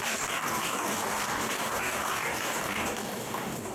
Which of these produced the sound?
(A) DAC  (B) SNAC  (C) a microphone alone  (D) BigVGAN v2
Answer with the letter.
A